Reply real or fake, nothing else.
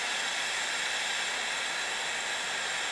real